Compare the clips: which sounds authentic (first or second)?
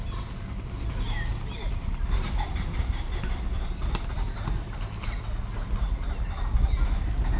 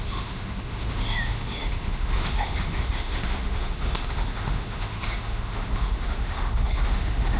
first